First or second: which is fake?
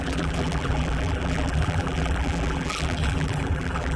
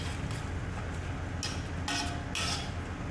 first